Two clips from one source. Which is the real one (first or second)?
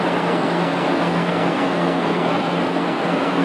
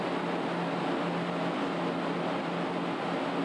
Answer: second